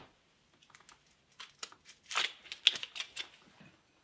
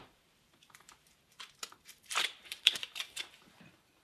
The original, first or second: first